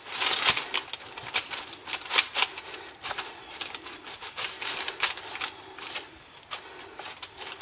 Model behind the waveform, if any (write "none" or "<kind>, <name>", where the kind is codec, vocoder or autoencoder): none